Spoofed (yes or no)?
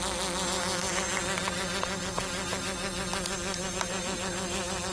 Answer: no